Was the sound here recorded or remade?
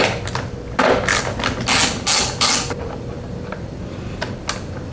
recorded